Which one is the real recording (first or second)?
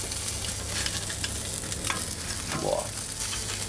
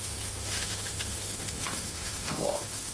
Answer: first